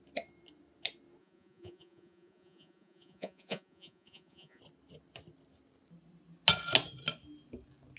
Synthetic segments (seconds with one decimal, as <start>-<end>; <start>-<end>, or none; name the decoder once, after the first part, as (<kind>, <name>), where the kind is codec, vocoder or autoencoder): 1.2-4.6 (vocoder, Vocos)